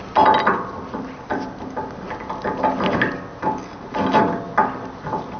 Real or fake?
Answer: real